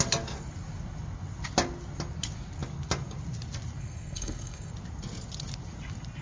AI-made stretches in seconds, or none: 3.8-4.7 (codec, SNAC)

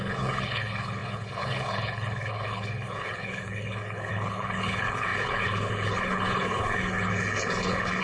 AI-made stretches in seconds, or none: 0.0-8.0 (codec, HILCodec)

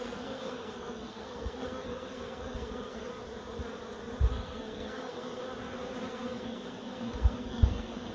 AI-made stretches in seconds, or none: 0.0-3.1 (codec, SNAC); 4.3-5.4; 6.1-8.1

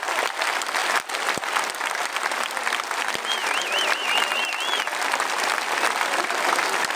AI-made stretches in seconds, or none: 3.4-4.3 (vocoder, BigVGAN v2)

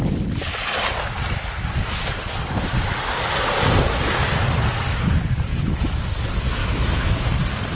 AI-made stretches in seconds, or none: 5.5-6.0 (autoencoder, DAC-VAE); 6.6-7.3

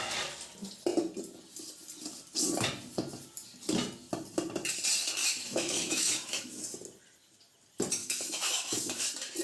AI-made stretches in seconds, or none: 5.2-6.6 (autoencoder, DAC-VAE); 8.0-9.0

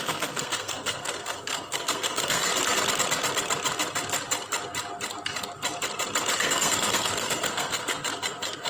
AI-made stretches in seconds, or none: 0.0-2.5 (codec, SNAC); 6.4-8.7